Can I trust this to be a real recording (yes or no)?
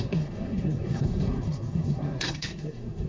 no